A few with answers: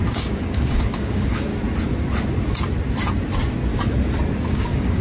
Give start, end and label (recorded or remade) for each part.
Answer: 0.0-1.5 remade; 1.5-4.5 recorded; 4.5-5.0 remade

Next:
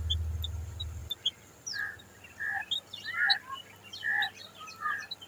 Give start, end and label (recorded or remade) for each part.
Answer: 0.0-5.3 recorded

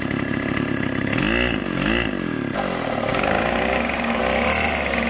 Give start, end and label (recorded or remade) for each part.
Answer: 0.0-3.1 recorded; 3.1-4.2 remade; 4.2-5.1 recorded

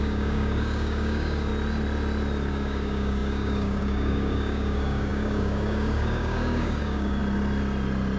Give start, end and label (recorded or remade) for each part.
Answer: 0.0-1.5 remade; 1.5-2.5 recorded; 2.5-7.2 remade; 7.2-8.2 recorded

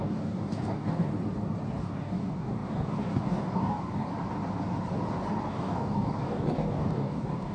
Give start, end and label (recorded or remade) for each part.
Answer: 0.0-1.1 remade; 1.1-1.8 recorded; 1.8-4.1 remade; 4.1-5.5 recorded; 5.5-7.5 remade

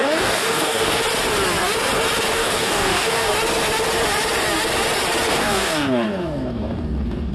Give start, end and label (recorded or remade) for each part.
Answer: 0.0-1.0 remade; 1.0-2.3 recorded; 2.3-3.3 remade; 3.3-5.3 recorded; 5.3-7.3 remade

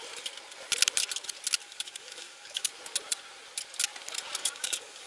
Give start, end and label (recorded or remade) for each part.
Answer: 0.0-1.6 recorded; 1.6-2.7 remade; 2.7-4.4 recorded; 4.4-5.1 remade